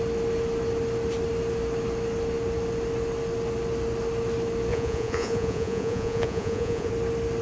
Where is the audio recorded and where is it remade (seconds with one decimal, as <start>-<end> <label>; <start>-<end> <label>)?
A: 0.0-4.7 recorded; 4.7-6.9 remade; 6.9-7.4 recorded